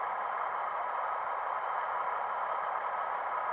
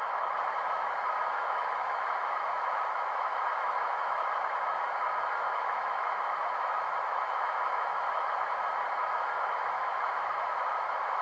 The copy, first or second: second